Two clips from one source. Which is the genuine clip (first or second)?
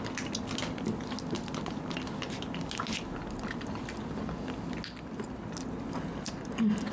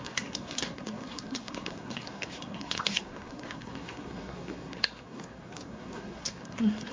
first